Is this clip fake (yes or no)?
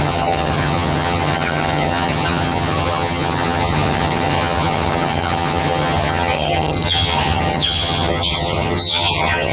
yes